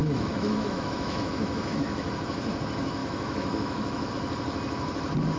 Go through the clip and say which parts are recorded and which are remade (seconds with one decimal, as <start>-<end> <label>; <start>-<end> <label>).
0.0-2.1 remade; 2.1-3.0 recorded; 3.0-4.1 remade; 4.1-5.4 recorded